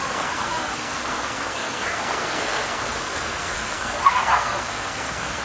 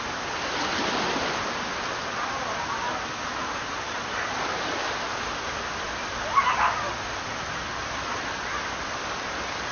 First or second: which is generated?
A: first